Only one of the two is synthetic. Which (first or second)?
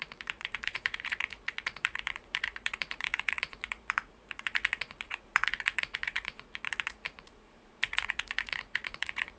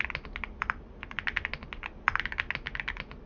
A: first